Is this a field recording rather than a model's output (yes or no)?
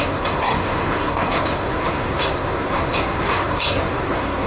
no